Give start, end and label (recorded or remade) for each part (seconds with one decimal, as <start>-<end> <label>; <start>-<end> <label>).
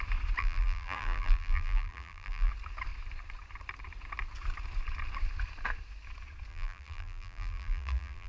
0.0-0.4 recorded; 0.4-2.5 remade; 2.5-6.5 recorded; 6.5-8.3 remade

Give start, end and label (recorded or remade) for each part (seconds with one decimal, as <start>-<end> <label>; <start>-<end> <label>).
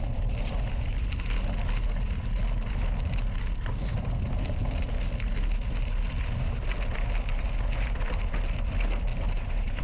0.0-9.1 recorded; 9.1-9.8 remade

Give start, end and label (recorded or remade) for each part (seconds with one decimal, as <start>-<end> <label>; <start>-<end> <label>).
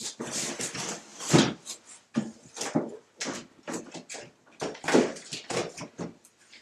0.0-1.1 recorded; 1.1-3.8 remade; 3.8-6.6 recorded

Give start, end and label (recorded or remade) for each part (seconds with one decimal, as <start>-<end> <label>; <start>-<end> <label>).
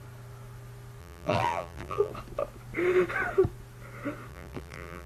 0.0-1.0 recorded; 1.0-2.1 remade; 2.1-4.3 recorded; 4.3-5.1 remade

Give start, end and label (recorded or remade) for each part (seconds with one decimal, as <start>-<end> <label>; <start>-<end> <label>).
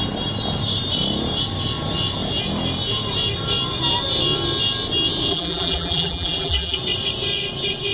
0.0-5.3 recorded; 5.3-6.8 remade; 6.8-7.9 recorded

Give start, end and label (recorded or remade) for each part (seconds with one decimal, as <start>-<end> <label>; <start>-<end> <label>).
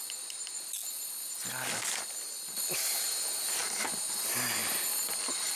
0.0-4.6 recorded; 4.6-5.6 remade